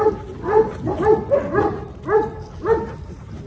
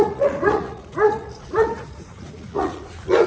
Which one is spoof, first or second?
second